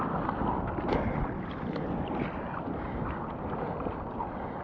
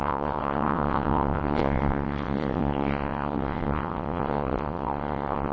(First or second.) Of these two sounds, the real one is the first